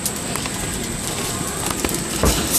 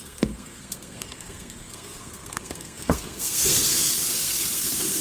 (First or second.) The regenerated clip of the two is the second